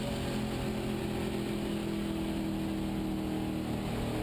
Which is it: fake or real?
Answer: real